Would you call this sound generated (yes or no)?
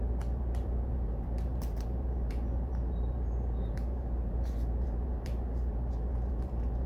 yes